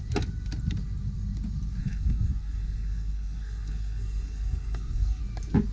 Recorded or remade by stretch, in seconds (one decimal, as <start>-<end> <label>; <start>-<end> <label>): 0.0-1.8 recorded; 1.8-5.2 remade; 5.2-5.7 recorded